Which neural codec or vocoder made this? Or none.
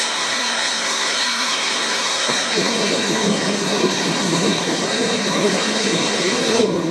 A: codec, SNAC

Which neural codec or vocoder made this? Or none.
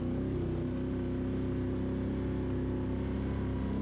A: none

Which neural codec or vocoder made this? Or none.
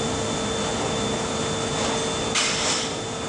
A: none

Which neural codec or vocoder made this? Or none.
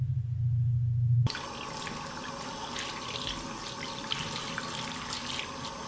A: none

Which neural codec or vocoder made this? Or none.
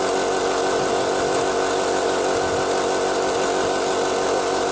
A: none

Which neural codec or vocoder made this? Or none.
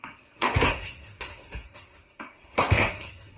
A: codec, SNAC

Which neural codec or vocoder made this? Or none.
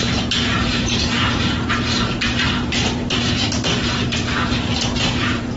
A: vocoder, BigVGAN v2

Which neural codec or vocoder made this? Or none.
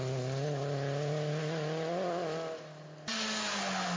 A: none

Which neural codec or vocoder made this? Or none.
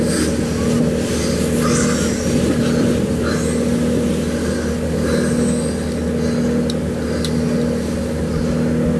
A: none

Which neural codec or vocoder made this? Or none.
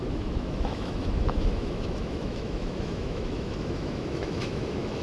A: autoencoder, DAC-VAE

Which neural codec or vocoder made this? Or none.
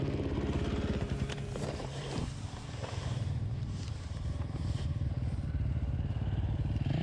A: vocoder, BigVGAN v2